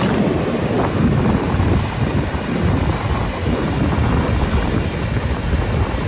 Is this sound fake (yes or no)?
no